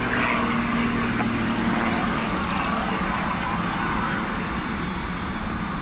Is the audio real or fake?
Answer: real